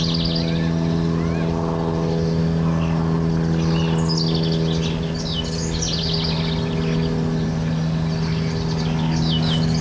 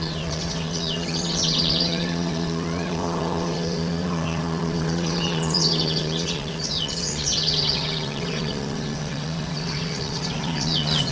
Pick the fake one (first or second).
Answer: second